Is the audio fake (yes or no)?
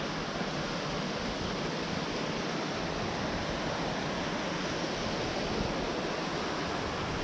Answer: no